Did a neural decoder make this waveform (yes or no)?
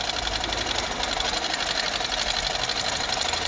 no